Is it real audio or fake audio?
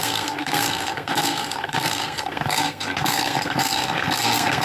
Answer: fake